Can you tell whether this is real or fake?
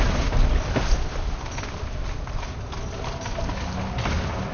real